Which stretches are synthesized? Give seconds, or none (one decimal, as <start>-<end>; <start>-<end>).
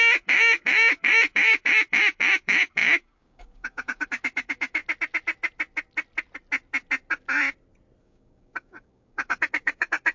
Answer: 0.0-4.8; 8.0-10.1